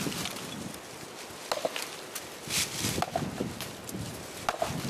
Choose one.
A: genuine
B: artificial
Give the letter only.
A